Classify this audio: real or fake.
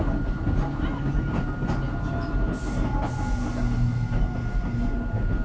real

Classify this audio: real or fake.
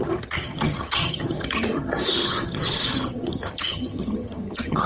fake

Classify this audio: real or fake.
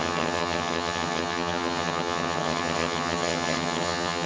fake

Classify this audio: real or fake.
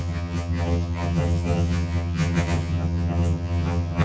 fake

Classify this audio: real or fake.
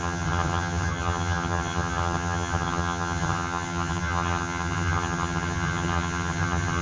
fake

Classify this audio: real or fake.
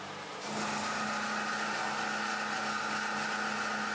real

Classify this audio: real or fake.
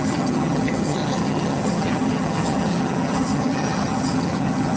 fake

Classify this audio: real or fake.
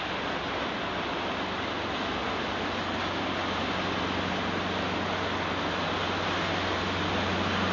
real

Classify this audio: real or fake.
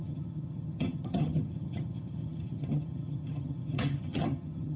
fake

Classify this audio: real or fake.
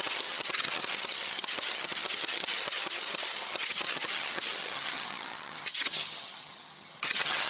fake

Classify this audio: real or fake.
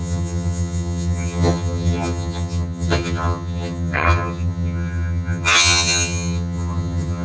fake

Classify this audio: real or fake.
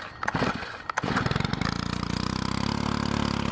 real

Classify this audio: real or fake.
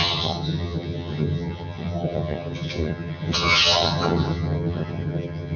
fake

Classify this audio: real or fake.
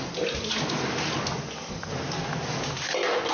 real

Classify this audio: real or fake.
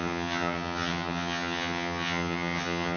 fake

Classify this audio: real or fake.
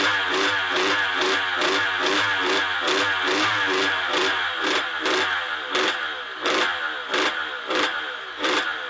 real